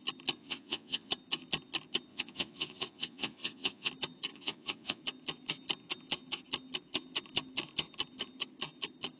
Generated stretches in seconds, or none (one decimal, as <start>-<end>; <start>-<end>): 0.4-1.1; 2.1-3.9; 4.3-5.0